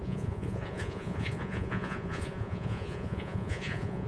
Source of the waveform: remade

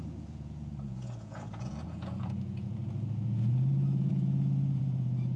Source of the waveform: remade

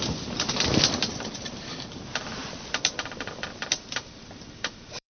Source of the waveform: remade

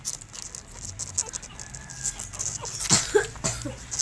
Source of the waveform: recorded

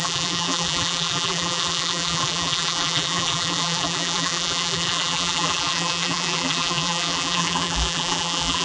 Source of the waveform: remade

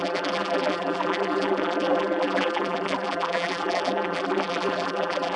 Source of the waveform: remade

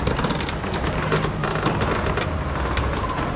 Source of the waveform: recorded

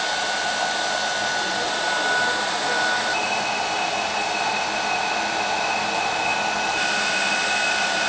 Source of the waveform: recorded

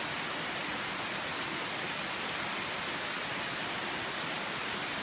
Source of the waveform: recorded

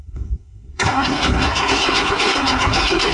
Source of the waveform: remade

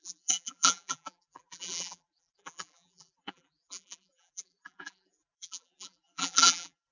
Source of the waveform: remade